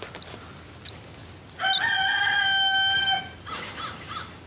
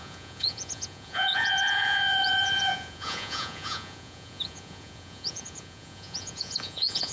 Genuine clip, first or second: first